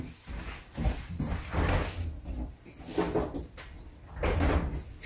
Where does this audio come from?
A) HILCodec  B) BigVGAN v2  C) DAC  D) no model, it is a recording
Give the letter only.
D